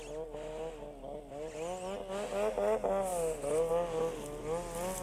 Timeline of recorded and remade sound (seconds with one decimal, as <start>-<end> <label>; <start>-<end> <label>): 0.0-5.0 recorded